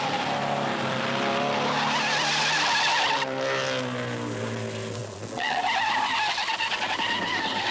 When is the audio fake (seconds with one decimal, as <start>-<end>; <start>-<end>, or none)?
5.0-5.6